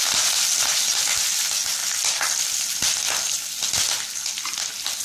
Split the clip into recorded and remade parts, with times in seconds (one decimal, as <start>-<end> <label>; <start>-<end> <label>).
0.0-5.0 recorded